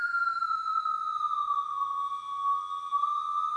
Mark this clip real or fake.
real